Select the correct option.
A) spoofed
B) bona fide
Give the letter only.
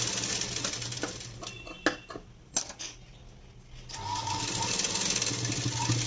B